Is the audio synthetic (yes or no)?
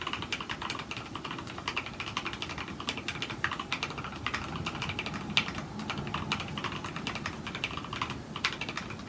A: no